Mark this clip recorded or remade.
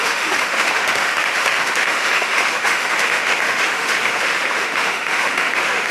remade